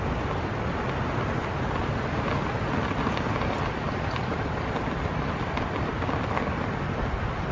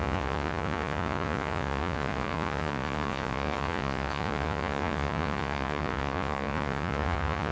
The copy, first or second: second